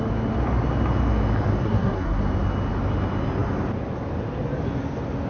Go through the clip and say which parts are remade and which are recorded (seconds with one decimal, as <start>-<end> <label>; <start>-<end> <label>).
0.0-1.6 recorded; 1.6-2.2 remade; 2.2-5.3 recorded